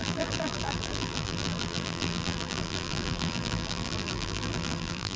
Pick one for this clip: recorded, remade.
remade